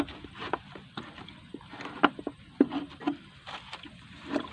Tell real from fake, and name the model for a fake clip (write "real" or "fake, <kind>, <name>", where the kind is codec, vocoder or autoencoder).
fake, vocoder, BigVGAN v2